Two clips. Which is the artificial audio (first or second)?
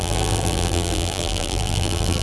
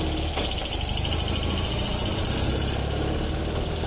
first